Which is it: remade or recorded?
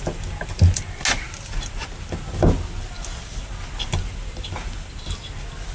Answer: recorded